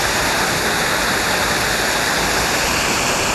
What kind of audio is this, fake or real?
real